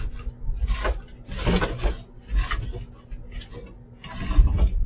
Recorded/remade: recorded